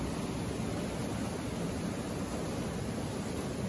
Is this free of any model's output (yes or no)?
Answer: yes